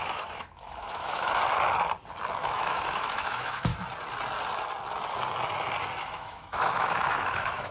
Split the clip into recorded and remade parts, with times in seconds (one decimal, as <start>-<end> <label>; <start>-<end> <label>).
0.0-1.4 remade; 1.4-2.4 recorded; 2.4-3.7 remade; 3.7-6.0 recorded; 6.0-7.7 remade